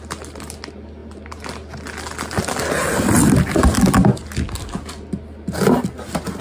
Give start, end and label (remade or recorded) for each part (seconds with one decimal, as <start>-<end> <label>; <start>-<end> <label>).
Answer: 0.0-6.4 recorded